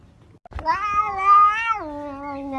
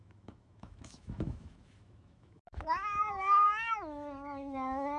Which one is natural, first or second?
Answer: first